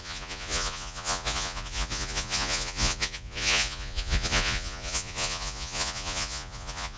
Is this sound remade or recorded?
remade